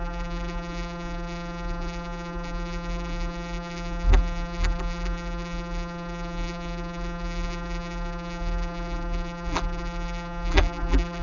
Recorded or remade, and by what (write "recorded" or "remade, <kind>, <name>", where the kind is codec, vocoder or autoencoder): remade, vocoder, BigVGAN v2